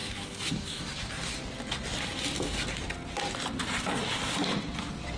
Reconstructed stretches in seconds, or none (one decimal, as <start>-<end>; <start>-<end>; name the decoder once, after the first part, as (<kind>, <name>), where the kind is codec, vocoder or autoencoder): 0.0-1.1 (autoencoder, DAC-VAE)